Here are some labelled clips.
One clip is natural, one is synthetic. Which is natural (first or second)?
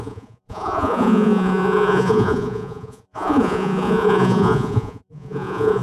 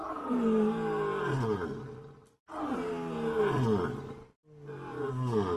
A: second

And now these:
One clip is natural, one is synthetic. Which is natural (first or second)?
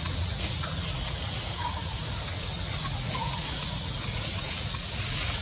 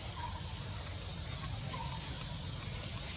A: second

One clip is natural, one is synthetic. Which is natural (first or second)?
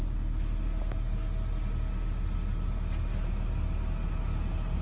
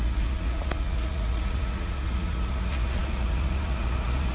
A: first